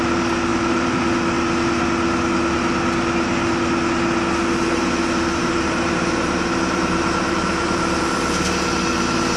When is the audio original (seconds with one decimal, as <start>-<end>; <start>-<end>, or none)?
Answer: 0.0-0.5; 1.0-5.4; 8.0-9.4